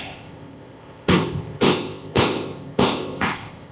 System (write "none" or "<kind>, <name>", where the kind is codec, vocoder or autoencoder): codec, ZipCodec